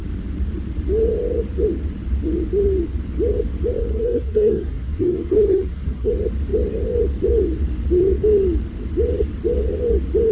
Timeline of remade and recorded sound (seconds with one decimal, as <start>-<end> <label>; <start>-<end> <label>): 0.0-3.8 recorded; 3.8-6.1 remade; 6.1-10.3 recorded